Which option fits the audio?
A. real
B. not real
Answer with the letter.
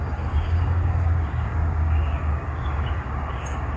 B